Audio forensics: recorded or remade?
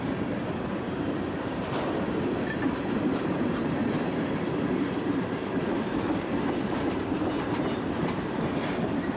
remade